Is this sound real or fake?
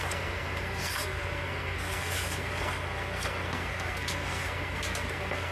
fake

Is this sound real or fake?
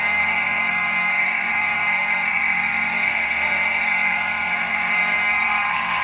fake